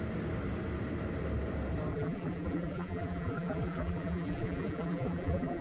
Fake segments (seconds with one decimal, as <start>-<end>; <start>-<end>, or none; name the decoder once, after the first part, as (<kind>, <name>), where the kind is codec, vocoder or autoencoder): 1.9-5.6 (vocoder, BigVGAN v2)